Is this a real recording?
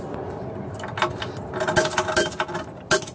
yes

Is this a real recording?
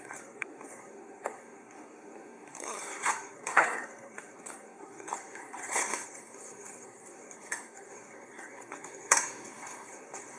no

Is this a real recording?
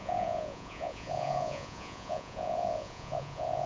no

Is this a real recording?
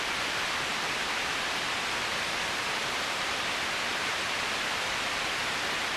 no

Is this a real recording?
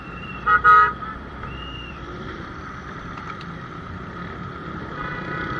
no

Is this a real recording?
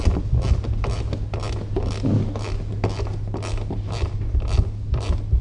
yes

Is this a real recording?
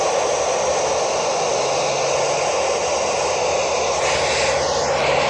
yes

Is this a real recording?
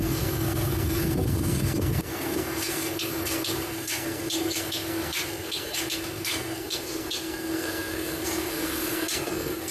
no